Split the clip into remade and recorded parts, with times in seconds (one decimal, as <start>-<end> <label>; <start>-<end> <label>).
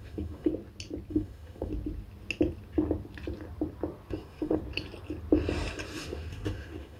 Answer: 0.0-0.5 remade; 0.5-1.1 recorded; 1.1-1.7 remade; 1.7-4.1 recorded; 4.1-4.6 remade; 4.6-6.0 recorded; 6.0-7.0 remade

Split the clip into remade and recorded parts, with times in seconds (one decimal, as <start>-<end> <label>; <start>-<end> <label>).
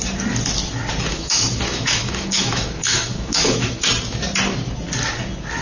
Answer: 0.0-1.1 recorded; 1.1-3.9 remade; 3.9-5.6 recorded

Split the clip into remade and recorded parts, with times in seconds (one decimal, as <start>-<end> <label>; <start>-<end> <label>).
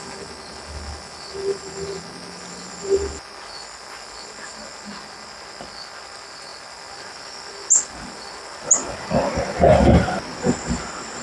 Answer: 0.0-11.2 recorded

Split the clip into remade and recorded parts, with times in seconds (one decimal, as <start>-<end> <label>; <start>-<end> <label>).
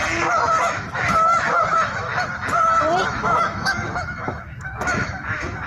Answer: 0.0-0.6 recorded; 0.6-2.1 remade; 2.1-3.1 recorded; 3.1-5.7 remade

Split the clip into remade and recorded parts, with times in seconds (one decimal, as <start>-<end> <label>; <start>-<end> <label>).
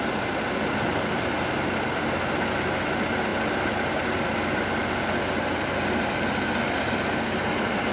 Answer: 0.0-7.9 recorded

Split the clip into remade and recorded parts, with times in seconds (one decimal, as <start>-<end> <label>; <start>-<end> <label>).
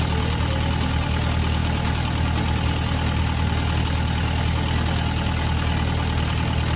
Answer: 0.0-6.8 recorded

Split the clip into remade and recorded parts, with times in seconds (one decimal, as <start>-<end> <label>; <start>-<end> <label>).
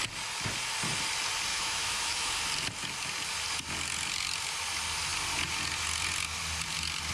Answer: 0.0-1.5 recorded; 1.5-2.3 remade; 2.3-7.1 recorded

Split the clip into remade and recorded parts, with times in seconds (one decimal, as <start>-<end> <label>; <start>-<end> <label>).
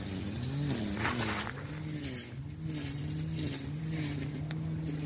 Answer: 0.0-5.1 recorded